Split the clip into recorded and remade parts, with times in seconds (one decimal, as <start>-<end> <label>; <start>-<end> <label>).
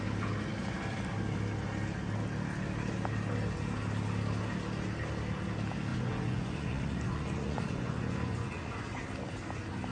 0.0-5.9 recorded; 5.9-9.0 remade; 9.0-9.9 recorded